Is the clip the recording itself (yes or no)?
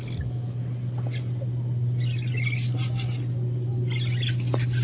yes